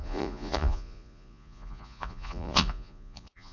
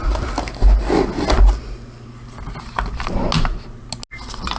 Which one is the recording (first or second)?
second